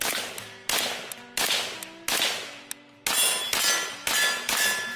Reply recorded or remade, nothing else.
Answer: recorded